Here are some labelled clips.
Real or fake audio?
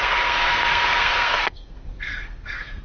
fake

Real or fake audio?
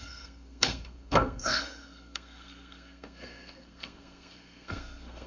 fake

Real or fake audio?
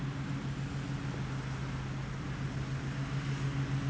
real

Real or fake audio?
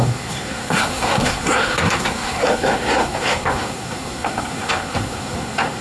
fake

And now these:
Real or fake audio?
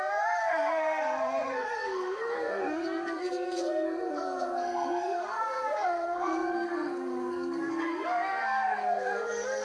fake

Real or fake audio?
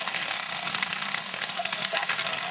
fake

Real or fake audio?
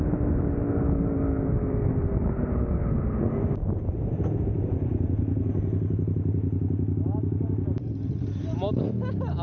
real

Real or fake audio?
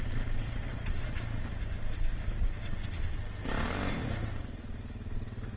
real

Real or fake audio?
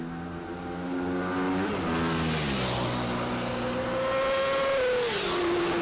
real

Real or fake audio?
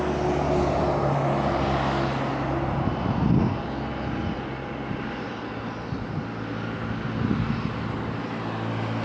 real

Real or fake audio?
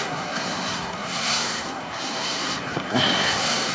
fake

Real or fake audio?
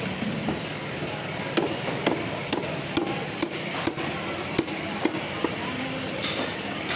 real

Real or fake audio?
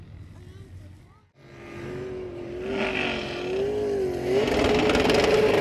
real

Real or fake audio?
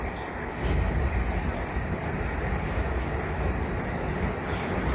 real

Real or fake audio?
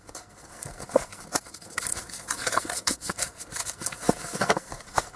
fake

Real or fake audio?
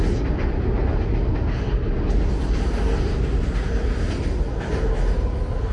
real